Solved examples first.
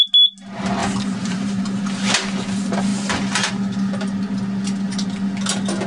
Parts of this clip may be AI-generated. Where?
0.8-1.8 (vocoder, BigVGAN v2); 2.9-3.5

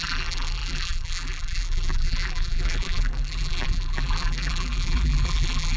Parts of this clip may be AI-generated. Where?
0.0-5.8 (vocoder, BigVGAN v2)

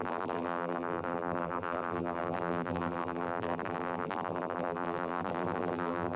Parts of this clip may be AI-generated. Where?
0.0-6.2 (vocoder, BigVGAN v2)

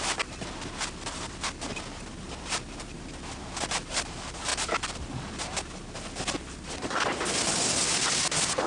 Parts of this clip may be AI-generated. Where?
4.5-5.0 (vocoder, BigVGAN v2)

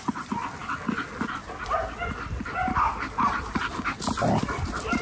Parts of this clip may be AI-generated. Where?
none

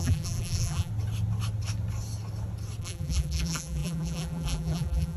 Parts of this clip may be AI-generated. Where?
0.0-0.9 (vocoder, BigVGAN v2); 2.8-5.2